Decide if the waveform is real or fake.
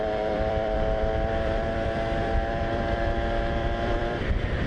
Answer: fake